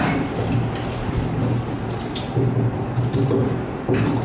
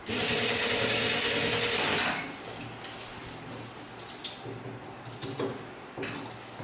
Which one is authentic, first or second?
second